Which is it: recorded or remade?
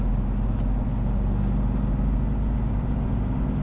recorded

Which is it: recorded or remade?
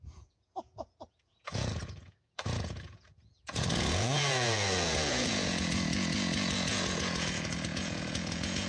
remade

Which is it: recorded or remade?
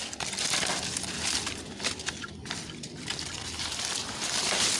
recorded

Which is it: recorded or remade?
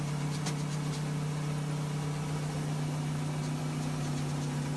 recorded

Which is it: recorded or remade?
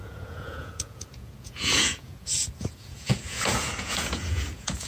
remade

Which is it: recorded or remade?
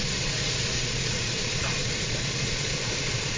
remade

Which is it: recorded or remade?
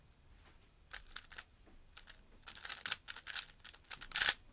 recorded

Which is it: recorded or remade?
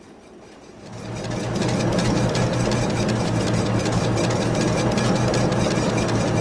recorded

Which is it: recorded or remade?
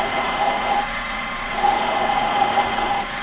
remade